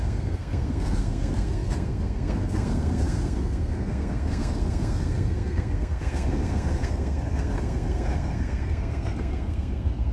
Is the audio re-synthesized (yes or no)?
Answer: yes